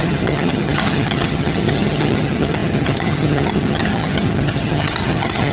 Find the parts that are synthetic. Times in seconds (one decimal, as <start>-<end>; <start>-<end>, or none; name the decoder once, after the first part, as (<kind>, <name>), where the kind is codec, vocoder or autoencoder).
0.0-5.5 (vocoder, HiFi-GAN)